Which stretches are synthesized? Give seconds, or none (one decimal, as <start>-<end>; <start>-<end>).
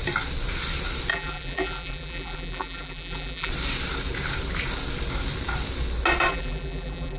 1.1-3.5; 6.3-7.2